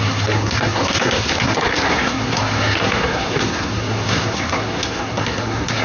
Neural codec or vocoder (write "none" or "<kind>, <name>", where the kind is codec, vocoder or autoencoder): codec, SNAC